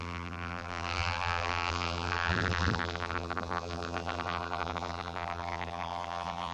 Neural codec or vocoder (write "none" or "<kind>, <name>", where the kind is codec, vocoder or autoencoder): vocoder, BigVGAN v2